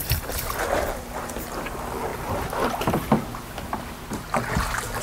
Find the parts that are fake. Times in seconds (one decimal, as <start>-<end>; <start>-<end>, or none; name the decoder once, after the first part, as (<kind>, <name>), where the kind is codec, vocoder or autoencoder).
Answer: none

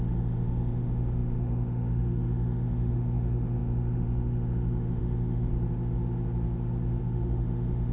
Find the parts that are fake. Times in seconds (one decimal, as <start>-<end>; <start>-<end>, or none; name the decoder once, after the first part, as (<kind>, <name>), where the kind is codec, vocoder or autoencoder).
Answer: 0.0-5.5 (autoencoder, DAC-VAE); 7.0-7.9

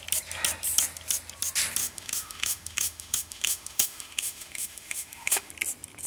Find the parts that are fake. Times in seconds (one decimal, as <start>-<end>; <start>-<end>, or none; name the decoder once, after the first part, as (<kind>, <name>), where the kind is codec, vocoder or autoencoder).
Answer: 1.8-5.5 (autoencoder, DAC-VAE)

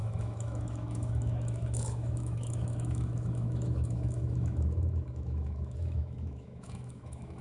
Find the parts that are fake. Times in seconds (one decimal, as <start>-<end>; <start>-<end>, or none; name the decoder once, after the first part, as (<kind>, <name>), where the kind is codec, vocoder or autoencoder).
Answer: 0.0-7.4 (autoencoder, DAC-VAE)

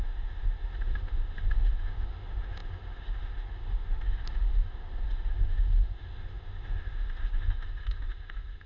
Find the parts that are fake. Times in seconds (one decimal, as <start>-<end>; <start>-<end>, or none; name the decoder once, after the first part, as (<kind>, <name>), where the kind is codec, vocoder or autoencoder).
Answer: 0.0-8.7 (autoencoder, DAC-VAE)

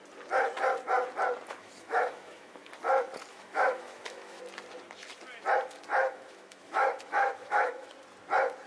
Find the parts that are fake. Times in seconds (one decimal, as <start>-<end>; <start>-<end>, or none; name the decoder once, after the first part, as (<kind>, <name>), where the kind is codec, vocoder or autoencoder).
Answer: 1.6-2.7 (autoencoder, DAC-VAE); 3.3-4.4; 5.9-7.9

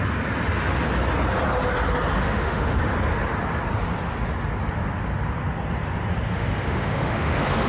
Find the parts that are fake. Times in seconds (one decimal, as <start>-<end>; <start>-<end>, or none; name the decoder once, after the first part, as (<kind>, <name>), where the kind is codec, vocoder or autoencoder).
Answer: 2.2-2.8 (autoencoder, DAC-VAE); 6.3-7.7

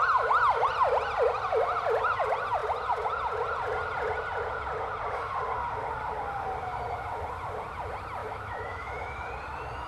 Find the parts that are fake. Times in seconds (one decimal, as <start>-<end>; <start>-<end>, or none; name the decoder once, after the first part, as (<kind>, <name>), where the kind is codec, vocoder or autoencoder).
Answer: 8.2-9.3 (autoencoder, DAC-VAE)